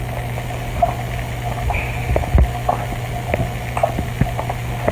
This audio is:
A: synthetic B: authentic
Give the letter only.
B